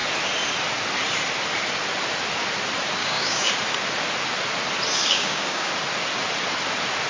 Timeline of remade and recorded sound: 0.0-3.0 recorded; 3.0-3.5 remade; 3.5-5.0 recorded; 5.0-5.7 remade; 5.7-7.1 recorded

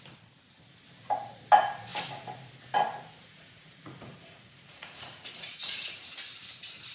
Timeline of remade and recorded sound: 0.0-3.2 recorded; 3.2-6.0 remade; 6.0-6.9 recorded

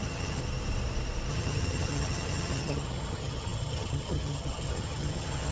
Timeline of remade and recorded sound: 0.0-0.4 remade; 0.4-1.3 recorded; 1.3-5.5 remade

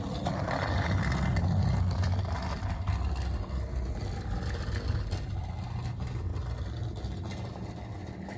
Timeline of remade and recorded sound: 0.0-8.4 recorded

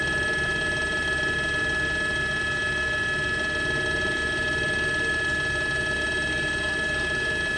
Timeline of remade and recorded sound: 0.0-7.6 recorded

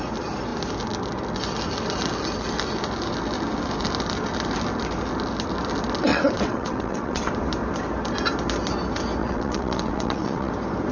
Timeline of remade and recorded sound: 0.0-6.1 recorded; 6.1-7.3 remade; 7.3-9.2 recorded; 9.2-10.5 remade; 10.5-10.9 recorded

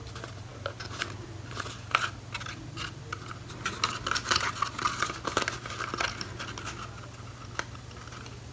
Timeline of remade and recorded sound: 0.0-8.5 recorded

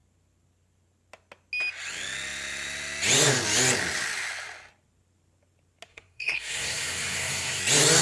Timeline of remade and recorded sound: 0.0-5.9 recorded; 5.9-7.6 remade; 7.6-8.0 recorded